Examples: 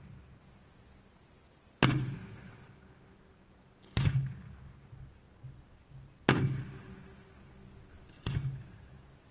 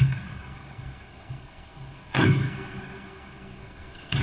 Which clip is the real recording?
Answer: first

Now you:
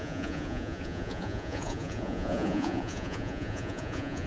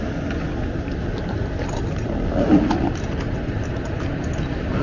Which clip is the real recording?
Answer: second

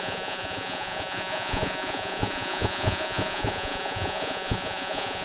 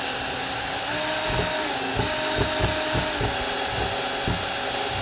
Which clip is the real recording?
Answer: second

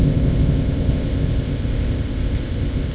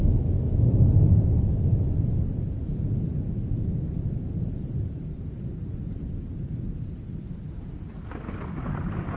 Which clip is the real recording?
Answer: second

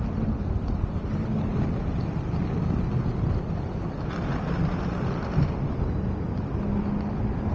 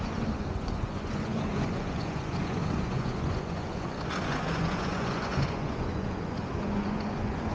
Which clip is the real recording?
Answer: first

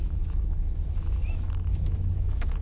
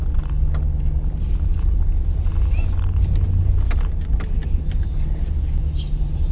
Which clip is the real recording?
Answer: second